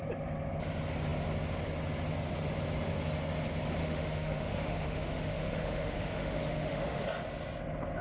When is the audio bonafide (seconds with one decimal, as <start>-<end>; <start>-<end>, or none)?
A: 0.0-3.8; 7.0-8.0